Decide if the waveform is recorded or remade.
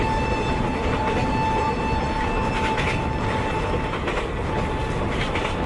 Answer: recorded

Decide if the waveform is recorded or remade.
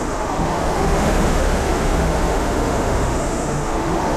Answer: remade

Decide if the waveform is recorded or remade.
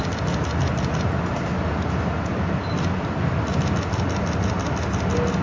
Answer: recorded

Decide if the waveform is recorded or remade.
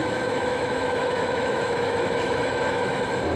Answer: remade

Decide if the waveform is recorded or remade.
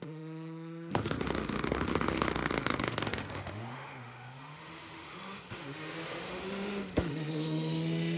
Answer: remade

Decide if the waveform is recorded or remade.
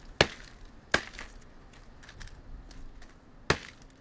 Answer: recorded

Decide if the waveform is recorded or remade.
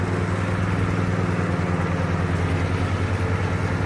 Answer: recorded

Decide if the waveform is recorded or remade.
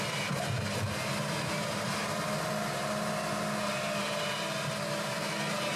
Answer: recorded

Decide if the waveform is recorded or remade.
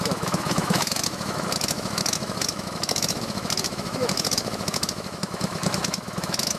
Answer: remade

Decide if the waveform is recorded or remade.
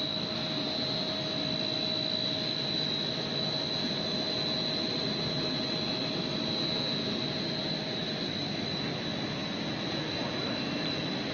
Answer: recorded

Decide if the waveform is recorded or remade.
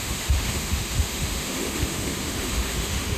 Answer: remade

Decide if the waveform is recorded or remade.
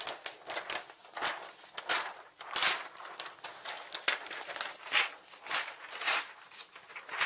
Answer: recorded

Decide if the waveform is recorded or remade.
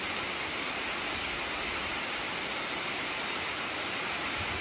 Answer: recorded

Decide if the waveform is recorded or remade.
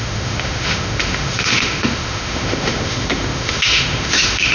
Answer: remade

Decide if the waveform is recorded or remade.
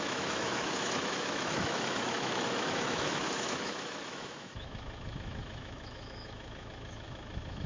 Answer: remade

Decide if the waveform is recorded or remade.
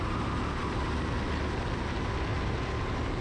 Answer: recorded